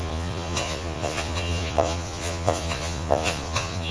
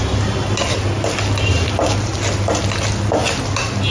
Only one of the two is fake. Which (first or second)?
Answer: first